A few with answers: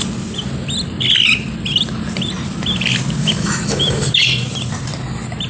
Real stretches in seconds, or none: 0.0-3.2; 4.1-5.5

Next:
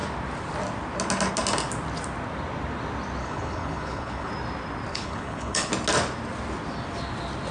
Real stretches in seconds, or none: 0.0-3.2; 4.3-4.9; 5.7-7.5

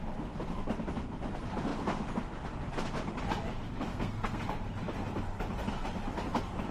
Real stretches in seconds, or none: 0.0-3.9; 4.4-6.7